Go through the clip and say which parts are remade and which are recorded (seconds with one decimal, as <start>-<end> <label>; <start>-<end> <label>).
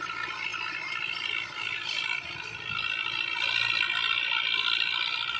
0.0-5.4 recorded